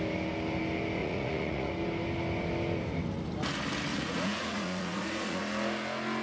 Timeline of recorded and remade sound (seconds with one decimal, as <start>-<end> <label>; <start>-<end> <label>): 0.0-1.0 recorded; 1.0-1.7 remade; 1.7-3.9 recorded; 3.9-5.4 remade; 5.4-6.2 recorded